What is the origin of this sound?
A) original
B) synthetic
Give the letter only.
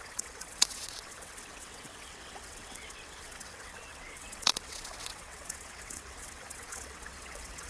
B